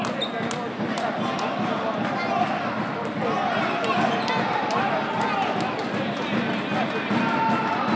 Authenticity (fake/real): real